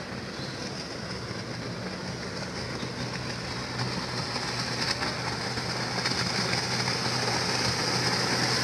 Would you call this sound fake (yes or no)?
no